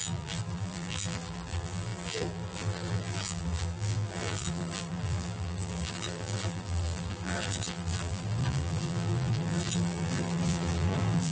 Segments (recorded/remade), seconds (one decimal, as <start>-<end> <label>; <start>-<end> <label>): 0.0-11.3 remade